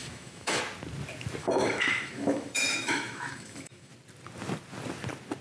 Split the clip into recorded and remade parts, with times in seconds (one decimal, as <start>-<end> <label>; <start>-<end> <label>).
0.0-0.6 remade; 0.6-1.4 recorded; 1.4-3.9 remade; 3.9-5.4 recorded